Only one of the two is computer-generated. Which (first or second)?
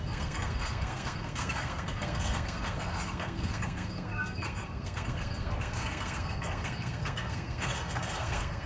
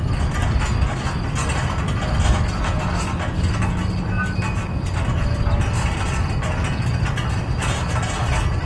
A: first